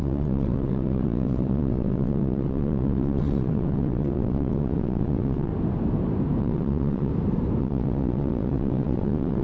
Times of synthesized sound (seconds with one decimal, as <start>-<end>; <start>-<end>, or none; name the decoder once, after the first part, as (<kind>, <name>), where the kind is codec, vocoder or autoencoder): 0.0-5.5 (vocoder, WaveNeXt); 6.4-7.1; 7.6-9.4